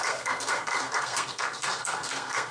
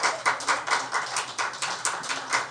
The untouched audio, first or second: second